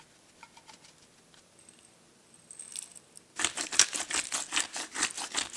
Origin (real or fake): real